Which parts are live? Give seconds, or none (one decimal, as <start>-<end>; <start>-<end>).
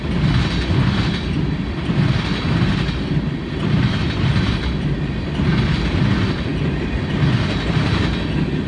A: 0.0-8.7